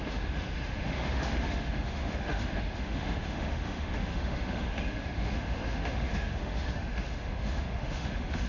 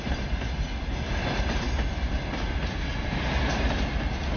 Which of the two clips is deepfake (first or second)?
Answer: first